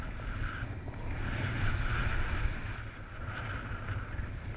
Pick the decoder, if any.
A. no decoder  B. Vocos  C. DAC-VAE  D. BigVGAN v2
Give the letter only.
A